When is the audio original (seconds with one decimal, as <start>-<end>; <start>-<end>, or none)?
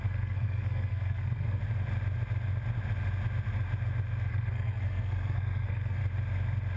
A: 1.6-4.3; 6.0-6.8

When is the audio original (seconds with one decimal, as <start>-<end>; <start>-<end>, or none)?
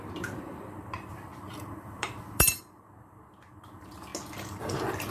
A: 4.1-4.6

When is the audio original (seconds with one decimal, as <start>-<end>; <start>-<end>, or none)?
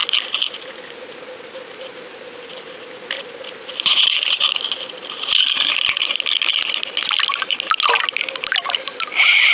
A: 0.0-9.5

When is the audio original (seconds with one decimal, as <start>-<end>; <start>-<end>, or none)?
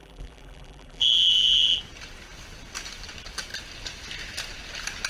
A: 1.8-5.1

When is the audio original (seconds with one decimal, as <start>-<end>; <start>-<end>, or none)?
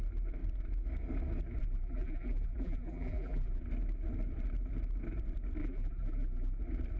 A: 0.0-1.6; 3.6-5.6; 6.6-7.0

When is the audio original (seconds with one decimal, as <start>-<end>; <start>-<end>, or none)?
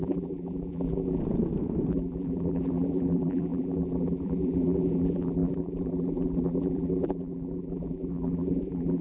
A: 1.2-1.9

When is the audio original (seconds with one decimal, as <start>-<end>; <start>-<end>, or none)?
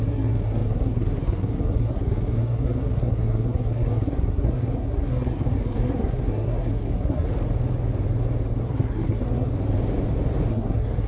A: 7.3-8.6; 9.5-10.5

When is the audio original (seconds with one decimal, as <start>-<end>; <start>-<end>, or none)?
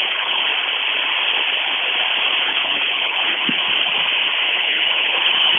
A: 0.5-2.4; 3.6-4.5